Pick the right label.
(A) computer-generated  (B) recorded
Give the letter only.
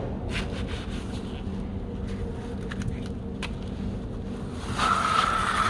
B